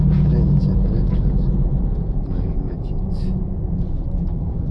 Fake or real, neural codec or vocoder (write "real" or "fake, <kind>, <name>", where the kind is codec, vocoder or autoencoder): fake, vocoder, Vocos